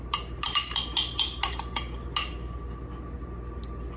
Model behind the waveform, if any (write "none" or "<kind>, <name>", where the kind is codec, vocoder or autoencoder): none